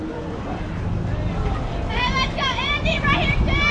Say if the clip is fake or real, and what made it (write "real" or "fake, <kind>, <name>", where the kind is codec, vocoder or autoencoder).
fake, vocoder, BigVGAN v2